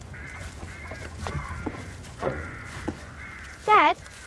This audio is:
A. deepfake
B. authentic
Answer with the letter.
A